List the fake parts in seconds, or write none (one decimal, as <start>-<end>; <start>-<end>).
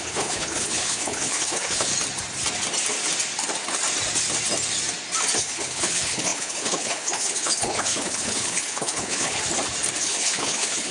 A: 0.0-1.9; 5.4-9.4; 10.0-10.9